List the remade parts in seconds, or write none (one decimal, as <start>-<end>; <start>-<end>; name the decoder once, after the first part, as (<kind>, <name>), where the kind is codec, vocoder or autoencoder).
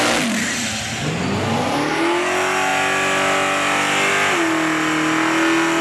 none